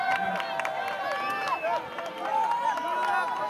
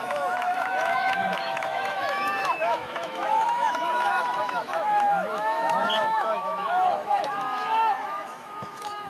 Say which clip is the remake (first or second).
second